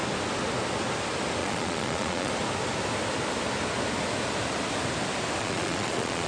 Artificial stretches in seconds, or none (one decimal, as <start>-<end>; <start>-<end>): 1.4-2.3; 5.4-6.3